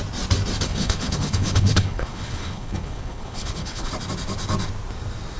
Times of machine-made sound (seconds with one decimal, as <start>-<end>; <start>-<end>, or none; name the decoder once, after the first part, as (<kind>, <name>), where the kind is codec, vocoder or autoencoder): 0.7-3.9 (codec, HILCodec)